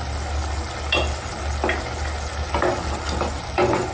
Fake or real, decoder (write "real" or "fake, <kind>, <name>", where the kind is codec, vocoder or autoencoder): real